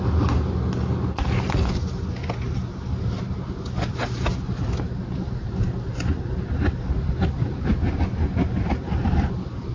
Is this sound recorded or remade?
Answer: recorded